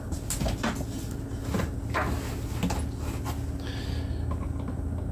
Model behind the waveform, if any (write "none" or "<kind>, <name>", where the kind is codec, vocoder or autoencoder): none